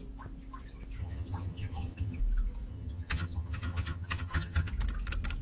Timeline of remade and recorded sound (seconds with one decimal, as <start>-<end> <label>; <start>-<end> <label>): 0.0-1.0 recorded; 1.0-2.2 remade; 2.2-2.7 recorded; 2.7-4.7 remade; 4.7-5.4 recorded